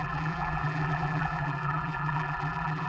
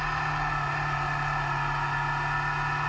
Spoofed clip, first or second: first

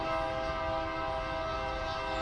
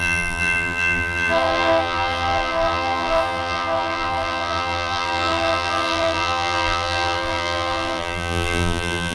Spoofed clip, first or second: second